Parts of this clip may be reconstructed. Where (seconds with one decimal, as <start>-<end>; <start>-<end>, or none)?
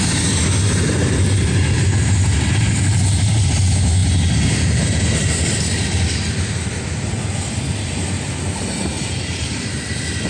none